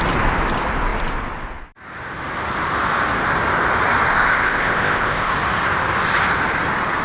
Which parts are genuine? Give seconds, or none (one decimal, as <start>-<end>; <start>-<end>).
0.0-4.1; 5.3-7.0

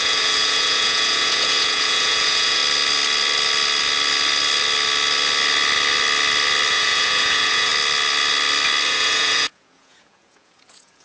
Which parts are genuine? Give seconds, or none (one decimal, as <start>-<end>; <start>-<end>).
2.6-6.7; 7.7-8.9

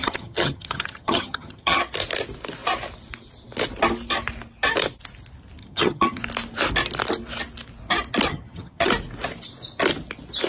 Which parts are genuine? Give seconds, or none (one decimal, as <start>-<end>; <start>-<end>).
1.8-5.6; 6.2-8.3; 8.9-10.5

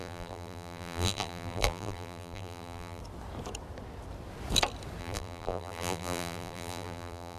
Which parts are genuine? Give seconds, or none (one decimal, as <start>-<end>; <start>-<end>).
3.0-5.0

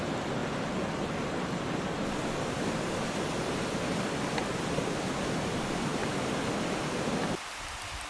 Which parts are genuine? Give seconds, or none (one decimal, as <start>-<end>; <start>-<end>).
0.0-8.1

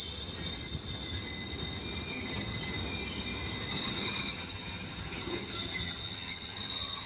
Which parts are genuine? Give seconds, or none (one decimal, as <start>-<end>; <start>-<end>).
0.0-2.1; 2.7-3.7